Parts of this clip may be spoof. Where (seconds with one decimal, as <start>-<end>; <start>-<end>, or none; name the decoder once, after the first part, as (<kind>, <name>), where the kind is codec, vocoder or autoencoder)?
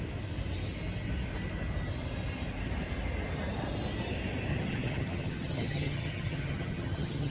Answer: 4.5-7.3 (vocoder, HiFi-GAN)